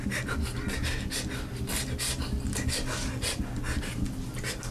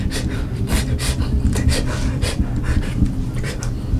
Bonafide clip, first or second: first